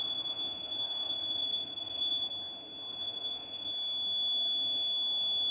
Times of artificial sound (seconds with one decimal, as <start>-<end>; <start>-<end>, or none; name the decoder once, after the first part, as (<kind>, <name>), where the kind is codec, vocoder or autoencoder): 0.0-2.3 (vocoder, Vocos); 2.9-3.7